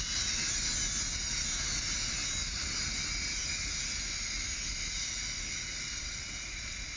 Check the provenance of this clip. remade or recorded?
recorded